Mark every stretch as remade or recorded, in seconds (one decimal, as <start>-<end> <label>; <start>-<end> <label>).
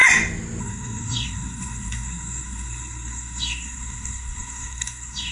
0.0-0.6 recorded; 0.6-5.3 remade